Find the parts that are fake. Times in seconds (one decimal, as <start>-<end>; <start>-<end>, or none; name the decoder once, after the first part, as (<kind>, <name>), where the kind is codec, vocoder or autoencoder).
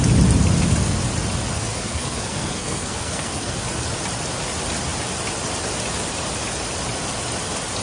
1.7-3.6 (codec, SNAC)